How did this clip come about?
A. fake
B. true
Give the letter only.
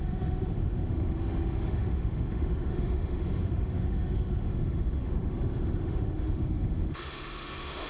A